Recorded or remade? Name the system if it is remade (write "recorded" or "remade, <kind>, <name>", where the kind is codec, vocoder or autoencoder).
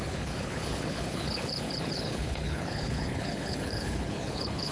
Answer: remade, codec, HILCodec